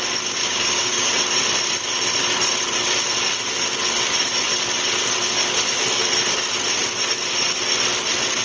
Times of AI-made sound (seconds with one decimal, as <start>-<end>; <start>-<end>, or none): 0.4-1.1